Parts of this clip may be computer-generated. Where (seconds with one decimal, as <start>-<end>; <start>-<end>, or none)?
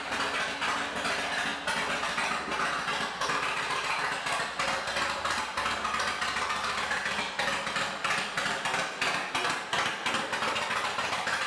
none